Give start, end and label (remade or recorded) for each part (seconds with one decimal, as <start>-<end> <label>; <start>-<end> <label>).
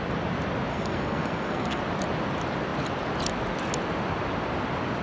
0.0-0.7 recorded; 0.7-1.8 remade; 1.8-5.0 recorded